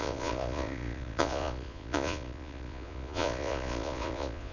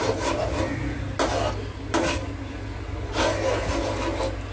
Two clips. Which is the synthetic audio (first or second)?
first